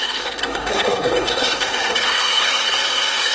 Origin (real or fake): fake